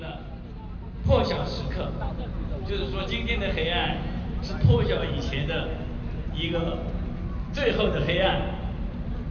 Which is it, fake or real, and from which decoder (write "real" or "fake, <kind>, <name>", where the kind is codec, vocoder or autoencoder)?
real